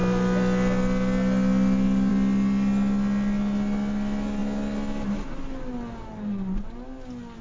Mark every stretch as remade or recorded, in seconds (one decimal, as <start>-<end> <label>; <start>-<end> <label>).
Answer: 0.0-7.4 recorded